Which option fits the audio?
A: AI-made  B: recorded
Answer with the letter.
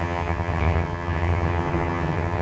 A